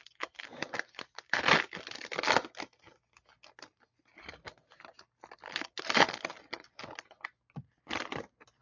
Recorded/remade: recorded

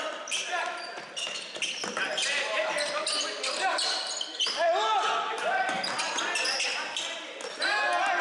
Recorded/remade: recorded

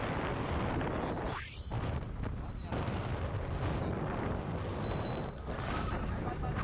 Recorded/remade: recorded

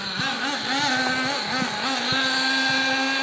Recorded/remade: recorded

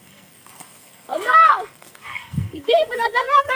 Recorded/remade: remade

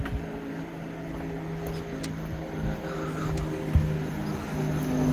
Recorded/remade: recorded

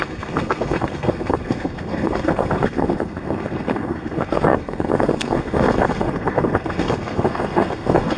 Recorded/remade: remade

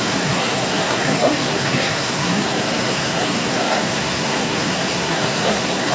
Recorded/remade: remade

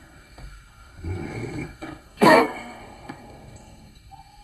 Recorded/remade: remade